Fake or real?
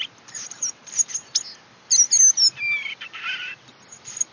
real